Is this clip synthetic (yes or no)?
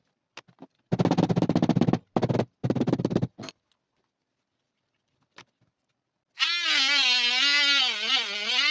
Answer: no